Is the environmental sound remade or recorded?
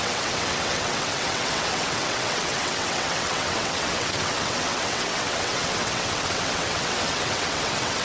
remade